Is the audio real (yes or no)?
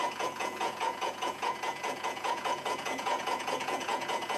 no